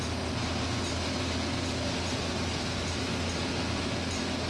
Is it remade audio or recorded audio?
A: recorded